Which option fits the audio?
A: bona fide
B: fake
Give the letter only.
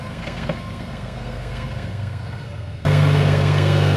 B